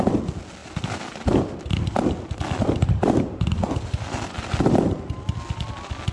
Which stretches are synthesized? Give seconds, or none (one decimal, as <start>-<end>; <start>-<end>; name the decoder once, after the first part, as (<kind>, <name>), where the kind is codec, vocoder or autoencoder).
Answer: 0.6-4.3 (vocoder, BigVGAN v2)